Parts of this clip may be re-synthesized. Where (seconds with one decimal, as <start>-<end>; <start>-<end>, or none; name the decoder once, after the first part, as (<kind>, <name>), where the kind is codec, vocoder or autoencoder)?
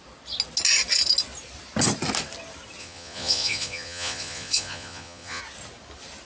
2.8-5.4 (vocoder, Vocos)